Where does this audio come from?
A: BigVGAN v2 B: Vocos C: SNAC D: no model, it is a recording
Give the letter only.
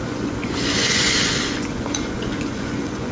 B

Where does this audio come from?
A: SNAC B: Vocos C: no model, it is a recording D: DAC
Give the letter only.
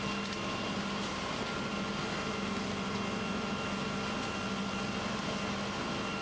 C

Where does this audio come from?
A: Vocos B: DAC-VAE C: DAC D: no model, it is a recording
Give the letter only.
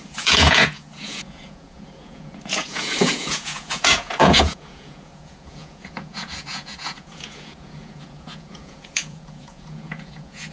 A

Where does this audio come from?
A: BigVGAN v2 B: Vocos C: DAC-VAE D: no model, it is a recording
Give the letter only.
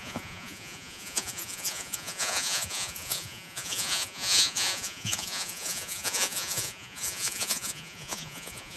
B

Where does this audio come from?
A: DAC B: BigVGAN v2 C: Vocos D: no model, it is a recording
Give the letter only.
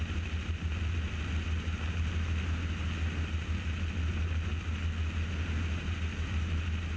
D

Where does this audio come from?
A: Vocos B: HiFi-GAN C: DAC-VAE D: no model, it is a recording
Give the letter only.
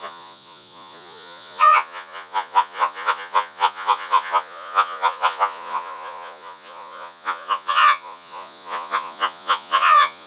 A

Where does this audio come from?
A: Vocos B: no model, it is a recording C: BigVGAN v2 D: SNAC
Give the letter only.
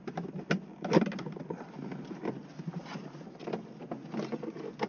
B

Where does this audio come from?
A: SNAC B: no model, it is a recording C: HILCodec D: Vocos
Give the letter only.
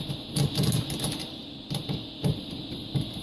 B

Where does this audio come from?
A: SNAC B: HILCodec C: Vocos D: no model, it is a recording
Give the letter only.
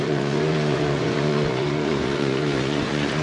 C